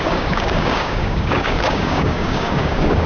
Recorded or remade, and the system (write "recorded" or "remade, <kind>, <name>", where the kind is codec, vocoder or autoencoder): remade, codec, DAC